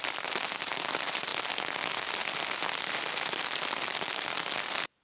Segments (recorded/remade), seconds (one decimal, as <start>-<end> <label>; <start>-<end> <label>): 0.0-1.3 remade; 1.3-4.3 recorded; 4.3-5.0 remade